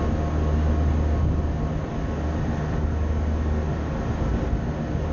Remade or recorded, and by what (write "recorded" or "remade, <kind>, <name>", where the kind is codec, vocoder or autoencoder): recorded